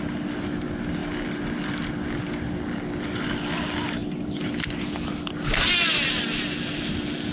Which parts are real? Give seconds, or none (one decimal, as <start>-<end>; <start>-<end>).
0.0-7.3